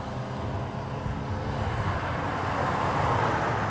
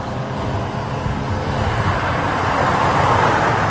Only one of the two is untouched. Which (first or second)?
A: first